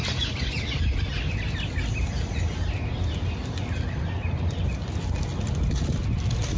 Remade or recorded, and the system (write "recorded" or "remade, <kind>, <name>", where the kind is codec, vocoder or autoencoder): recorded